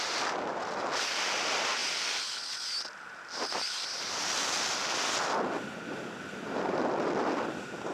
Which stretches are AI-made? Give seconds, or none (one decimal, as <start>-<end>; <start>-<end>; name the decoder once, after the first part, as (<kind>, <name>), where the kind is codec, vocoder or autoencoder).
none